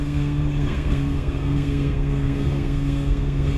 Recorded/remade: remade